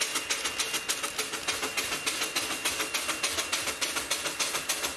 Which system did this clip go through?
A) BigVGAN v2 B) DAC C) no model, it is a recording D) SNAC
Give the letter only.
C